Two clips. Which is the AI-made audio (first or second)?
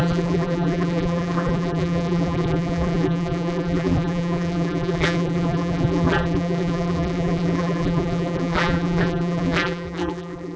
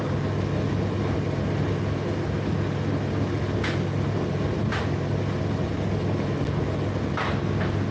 first